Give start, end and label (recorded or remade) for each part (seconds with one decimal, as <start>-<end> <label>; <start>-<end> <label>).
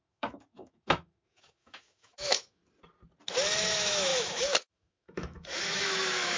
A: 0.0-2.6 remade; 2.6-3.6 recorded; 3.6-6.4 remade